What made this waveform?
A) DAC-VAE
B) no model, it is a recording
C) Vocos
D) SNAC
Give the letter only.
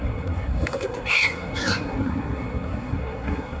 D